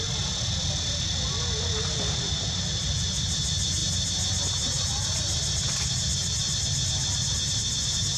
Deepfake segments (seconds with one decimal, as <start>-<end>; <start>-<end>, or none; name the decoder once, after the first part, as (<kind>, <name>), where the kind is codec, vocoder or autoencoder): none